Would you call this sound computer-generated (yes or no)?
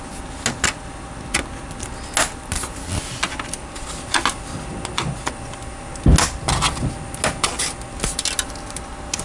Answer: no